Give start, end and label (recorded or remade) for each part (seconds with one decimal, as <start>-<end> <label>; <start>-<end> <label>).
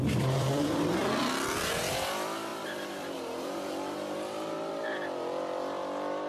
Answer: 0.0-1.0 remade; 1.0-1.7 recorded; 1.7-6.3 remade